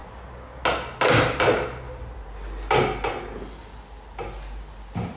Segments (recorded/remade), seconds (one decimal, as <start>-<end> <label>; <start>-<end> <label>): 0.0-5.2 recorded